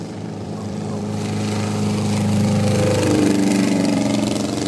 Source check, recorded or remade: remade